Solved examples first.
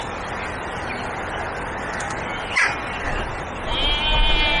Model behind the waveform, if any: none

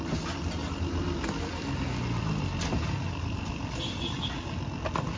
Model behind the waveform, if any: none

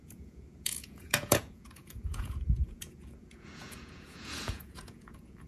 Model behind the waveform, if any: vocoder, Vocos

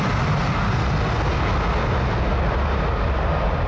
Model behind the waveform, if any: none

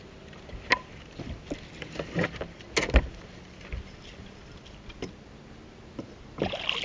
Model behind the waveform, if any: none